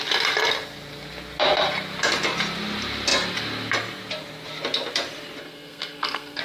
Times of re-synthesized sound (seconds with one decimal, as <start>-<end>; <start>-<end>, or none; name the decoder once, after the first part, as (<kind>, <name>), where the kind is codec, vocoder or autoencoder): 5.4-6.4 (codec, SNAC)